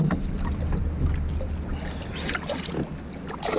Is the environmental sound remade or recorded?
recorded